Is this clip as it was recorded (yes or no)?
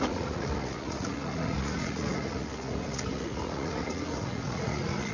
no